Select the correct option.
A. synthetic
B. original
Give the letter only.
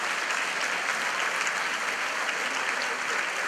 B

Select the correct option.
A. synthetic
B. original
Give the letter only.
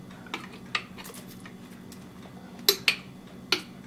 B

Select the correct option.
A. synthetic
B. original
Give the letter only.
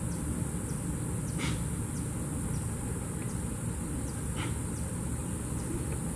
B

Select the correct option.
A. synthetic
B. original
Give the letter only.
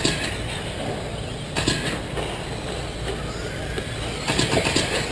B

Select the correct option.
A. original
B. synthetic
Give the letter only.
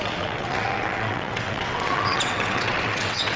B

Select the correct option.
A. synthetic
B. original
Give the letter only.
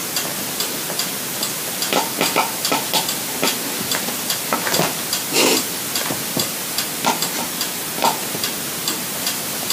B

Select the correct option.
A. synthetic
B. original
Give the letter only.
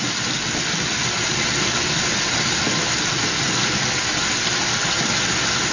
B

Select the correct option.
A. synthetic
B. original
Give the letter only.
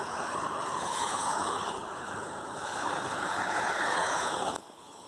A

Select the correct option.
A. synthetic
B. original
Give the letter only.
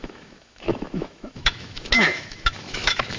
A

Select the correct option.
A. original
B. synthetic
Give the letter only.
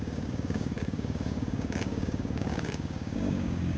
B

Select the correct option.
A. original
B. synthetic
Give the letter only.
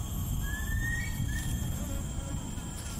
B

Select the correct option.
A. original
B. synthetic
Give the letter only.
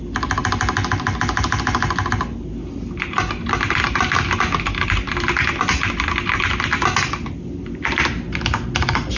A